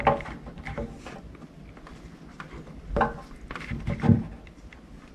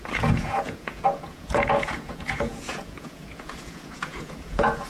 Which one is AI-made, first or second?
second